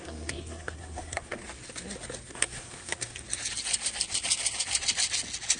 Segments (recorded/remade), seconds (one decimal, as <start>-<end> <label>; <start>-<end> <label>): 0.0-1.4 remade; 1.4-2.3 recorded; 2.3-3.1 remade; 3.1-5.6 recorded